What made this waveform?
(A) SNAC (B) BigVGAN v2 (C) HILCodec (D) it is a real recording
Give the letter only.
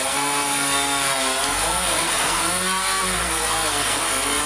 A